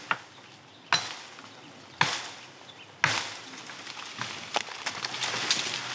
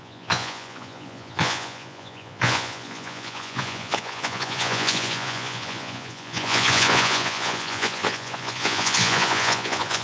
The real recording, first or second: first